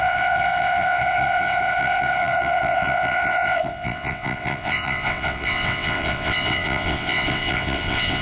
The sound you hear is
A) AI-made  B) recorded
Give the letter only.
A